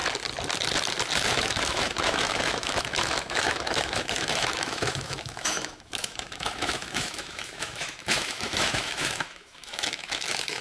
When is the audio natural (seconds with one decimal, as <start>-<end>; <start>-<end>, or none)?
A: 0.0-1.3